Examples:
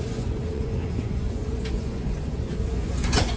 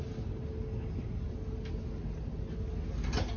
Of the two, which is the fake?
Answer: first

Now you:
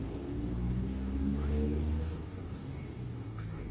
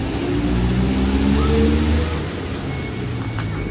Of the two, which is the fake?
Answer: first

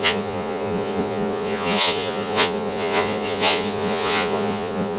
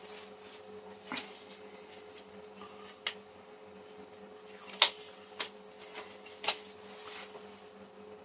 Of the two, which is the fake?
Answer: first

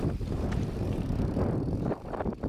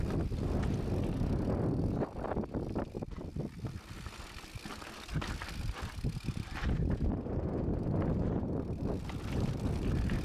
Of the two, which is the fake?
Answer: first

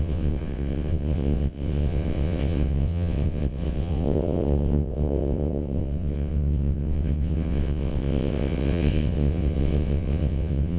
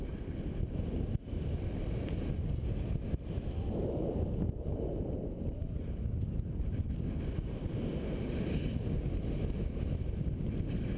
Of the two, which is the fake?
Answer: first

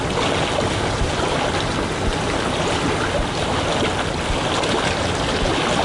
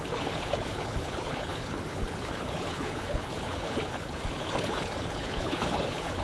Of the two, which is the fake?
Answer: second